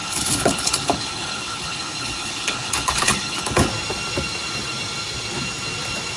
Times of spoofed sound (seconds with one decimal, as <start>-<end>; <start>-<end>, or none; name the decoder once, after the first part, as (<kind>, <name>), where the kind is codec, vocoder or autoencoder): 0.0-3.7 (codec, HILCodec)